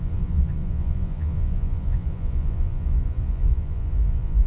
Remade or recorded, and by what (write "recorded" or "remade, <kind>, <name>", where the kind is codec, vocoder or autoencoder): remade, vocoder, Vocos